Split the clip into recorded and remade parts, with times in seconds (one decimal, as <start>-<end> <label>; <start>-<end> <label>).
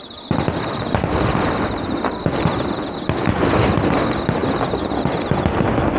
0.0-6.0 recorded